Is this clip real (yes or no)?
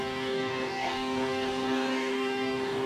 no